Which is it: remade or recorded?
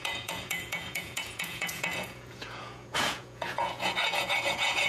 remade